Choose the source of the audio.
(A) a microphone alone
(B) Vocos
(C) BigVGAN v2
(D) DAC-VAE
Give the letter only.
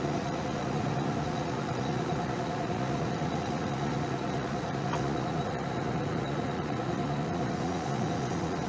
B